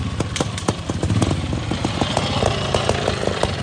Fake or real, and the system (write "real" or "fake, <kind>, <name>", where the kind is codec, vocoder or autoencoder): real